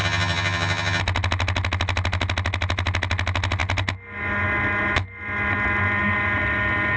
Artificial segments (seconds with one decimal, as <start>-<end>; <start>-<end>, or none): 0.0-1.0